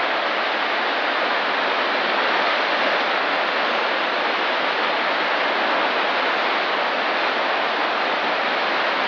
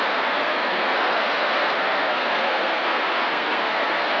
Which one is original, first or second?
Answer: first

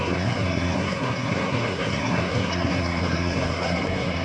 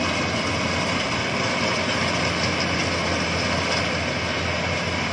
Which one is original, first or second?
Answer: second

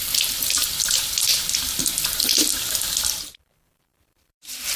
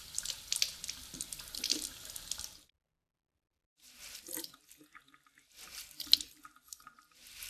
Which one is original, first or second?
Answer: second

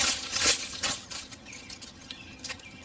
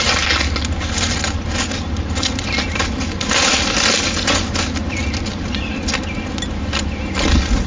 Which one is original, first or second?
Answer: second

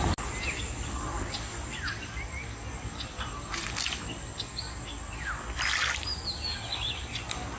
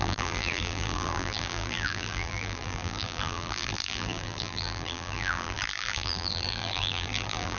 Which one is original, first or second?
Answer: first